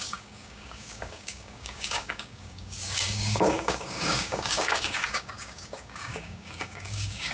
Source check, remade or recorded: remade